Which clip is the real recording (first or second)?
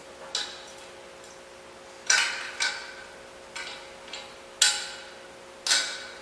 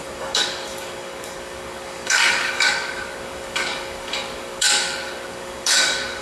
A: first